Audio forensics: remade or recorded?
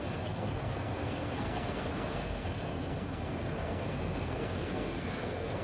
remade